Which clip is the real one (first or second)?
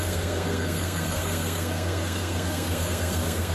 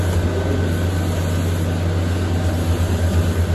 second